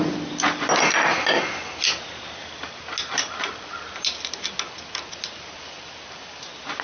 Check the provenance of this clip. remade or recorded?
recorded